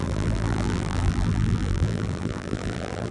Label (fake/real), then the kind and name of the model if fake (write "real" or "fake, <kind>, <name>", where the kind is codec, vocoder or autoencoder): fake, vocoder, BigVGAN v2